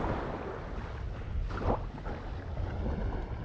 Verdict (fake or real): real